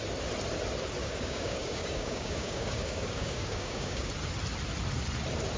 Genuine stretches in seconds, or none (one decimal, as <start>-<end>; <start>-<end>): 0.0-1.0; 4.1-5.6